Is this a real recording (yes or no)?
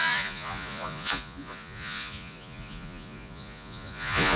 no